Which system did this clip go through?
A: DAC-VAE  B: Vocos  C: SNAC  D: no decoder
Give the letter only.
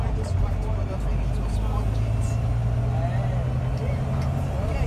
D